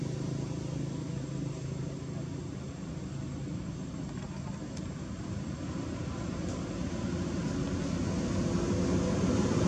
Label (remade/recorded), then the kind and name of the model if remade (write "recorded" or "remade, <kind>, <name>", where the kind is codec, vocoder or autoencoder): recorded